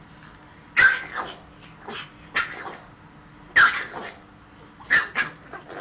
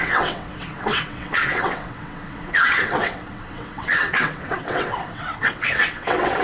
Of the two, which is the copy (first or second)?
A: second